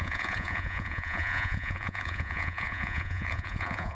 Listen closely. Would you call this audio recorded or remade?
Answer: remade